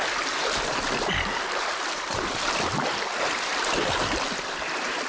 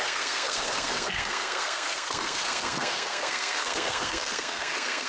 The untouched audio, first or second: first